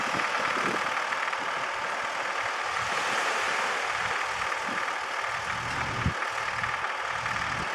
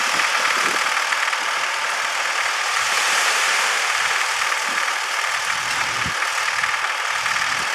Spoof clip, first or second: second